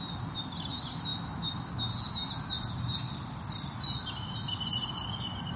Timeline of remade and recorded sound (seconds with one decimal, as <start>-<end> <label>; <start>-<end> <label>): 0.0-5.6 recorded